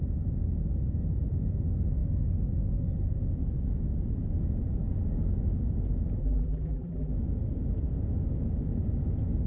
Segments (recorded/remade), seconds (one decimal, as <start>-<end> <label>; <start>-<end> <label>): 0.0-6.2 recorded; 6.2-7.1 remade; 7.1-9.5 recorded